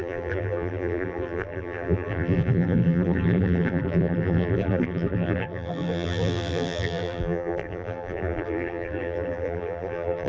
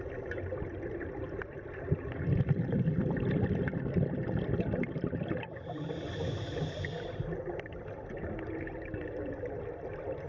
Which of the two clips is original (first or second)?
second